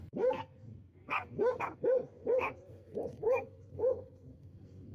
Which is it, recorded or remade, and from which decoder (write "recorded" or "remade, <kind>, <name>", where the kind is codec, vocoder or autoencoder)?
remade, codec, SNAC